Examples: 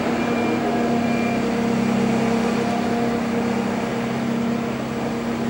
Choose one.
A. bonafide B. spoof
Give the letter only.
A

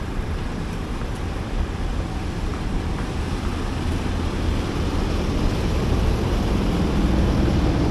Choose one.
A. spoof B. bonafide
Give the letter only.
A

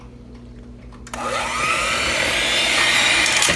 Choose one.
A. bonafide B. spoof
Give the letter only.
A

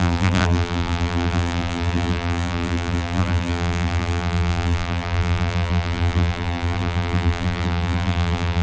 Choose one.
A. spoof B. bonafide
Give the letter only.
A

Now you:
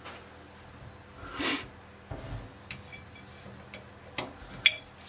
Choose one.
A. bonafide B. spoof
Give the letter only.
A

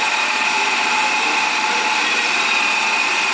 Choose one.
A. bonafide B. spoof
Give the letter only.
B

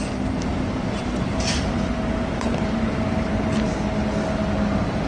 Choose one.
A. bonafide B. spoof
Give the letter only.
B